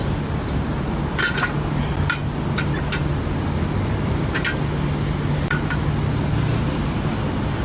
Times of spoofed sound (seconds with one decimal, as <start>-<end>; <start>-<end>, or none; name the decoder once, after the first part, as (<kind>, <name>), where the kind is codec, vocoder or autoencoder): none